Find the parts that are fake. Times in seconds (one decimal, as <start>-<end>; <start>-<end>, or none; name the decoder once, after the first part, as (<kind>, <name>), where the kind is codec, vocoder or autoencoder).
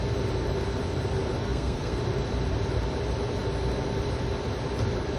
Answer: 1.4-2.0 (codec, SNAC)